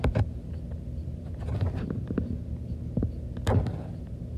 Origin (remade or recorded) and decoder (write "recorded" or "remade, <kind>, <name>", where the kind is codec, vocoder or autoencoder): recorded